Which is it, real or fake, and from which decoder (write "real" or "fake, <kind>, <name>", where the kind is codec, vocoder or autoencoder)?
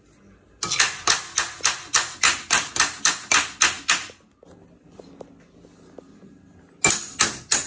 real